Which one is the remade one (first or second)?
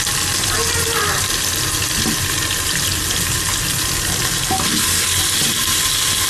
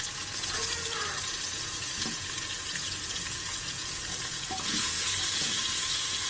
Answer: second